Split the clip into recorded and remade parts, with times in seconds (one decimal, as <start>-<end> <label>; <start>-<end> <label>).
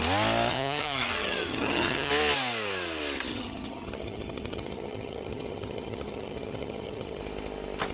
0.0-0.5 recorded; 0.5-2.1 remade; 2.1-3.3 recorded; 3.3-7.2 remade; 7.2-7.9 recorded